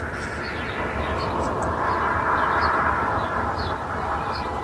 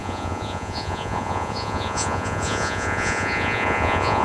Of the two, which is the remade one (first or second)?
second